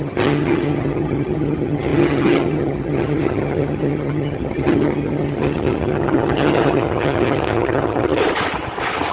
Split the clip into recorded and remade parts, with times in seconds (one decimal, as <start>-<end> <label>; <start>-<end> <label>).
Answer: 0.0-8.2 remade; 8.2-9.1 recorded